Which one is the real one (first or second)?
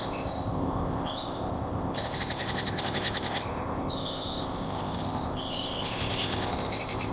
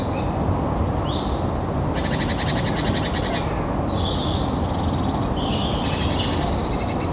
second